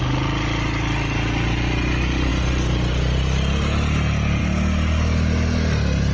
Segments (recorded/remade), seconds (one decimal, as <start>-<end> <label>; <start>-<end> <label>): 0.0-6.1 recorded